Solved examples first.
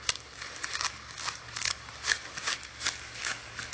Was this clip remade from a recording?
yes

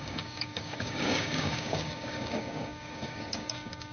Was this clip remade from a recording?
yes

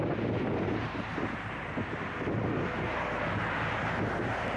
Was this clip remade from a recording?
no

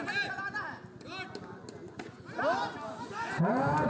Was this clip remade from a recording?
no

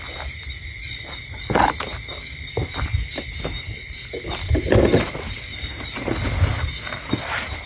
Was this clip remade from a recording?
no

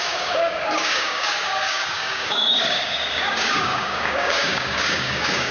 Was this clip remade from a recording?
yes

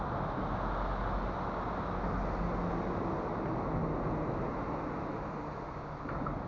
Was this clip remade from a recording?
no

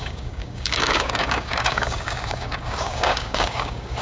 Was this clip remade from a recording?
yes